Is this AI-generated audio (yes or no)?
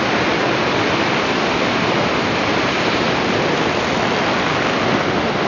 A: no